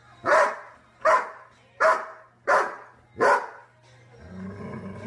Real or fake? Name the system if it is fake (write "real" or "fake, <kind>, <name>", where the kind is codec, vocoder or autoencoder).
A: real